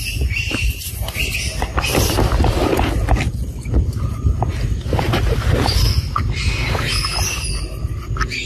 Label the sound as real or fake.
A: real